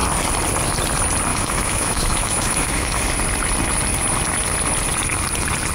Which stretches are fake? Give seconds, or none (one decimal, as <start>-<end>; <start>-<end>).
1.3-3.0